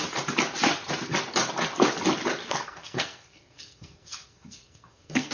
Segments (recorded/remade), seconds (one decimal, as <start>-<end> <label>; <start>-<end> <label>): 0.0-2.4 recorded; 2.4-5.3 remade